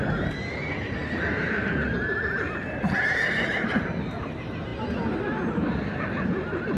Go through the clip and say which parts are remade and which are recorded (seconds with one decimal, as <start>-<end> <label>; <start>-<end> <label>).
0.0-6.8 recorded

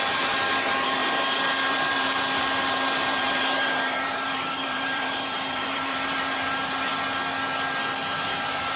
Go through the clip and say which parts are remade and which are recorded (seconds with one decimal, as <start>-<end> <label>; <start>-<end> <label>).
0.0-6.9 remade; 6.9-8.3 recorded; 8.3-8.8 remade